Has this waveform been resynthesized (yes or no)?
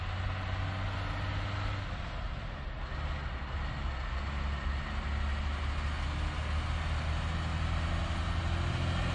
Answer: no